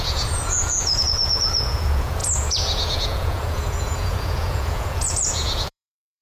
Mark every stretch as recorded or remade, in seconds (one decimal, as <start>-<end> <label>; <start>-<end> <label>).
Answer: 0.0-6.2 remade

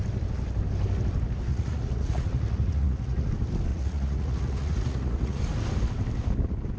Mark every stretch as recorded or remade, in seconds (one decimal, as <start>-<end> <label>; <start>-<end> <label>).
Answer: 0.0-1.5 recorded; 1.5-3.3 remade; 3.3-3.7 recorded; 3.7-5.4 remade; 5.4-6.8 recorded

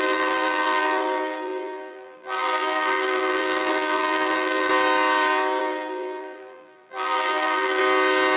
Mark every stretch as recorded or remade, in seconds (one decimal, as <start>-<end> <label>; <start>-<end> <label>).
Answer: 0.0-4.7 remade; 4.7-5.6 recorded; 5.6-7.8 remade; 7.8-8.4 recorded

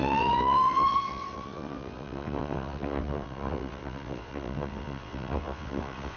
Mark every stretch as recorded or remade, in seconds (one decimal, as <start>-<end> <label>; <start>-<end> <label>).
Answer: 0.0-6.2 remade